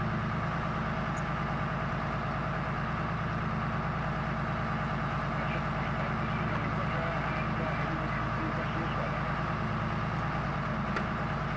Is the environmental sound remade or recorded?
recorded